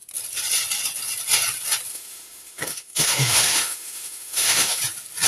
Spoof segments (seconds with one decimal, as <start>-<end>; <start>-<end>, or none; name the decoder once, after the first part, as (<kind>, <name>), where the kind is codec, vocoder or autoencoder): 1.9-4.8 (autoencoder, DAC-VAE)